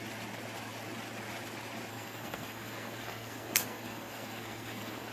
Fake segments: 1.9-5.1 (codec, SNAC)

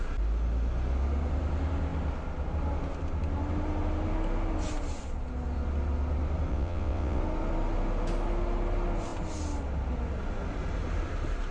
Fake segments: 6.5-7.2 (vocoder, WaveNeXt)

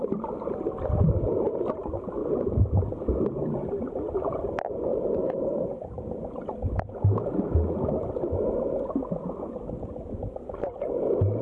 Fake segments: 2.2-3.0 (vocoder, BigVGAN v2); 4.9-6.4

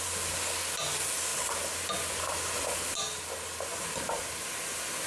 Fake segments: none